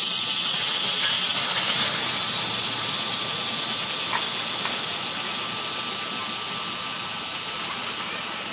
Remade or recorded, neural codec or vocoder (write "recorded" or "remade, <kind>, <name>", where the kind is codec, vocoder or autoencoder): recorded